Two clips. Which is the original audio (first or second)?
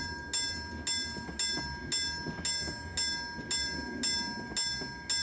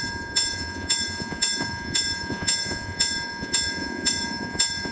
first